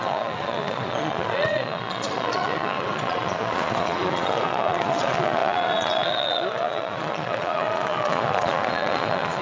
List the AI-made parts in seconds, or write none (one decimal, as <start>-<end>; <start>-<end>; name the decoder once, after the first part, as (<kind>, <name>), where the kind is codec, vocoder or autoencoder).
0.0-9.4 (vocoder, Vocos)